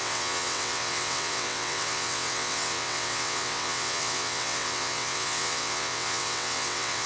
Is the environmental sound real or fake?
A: fake